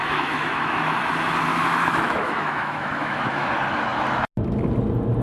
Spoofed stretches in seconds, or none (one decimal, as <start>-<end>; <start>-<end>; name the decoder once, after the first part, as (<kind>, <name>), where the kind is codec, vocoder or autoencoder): 0.0-1.0 (autoencoder, DAC-VAE); 1.5-3.5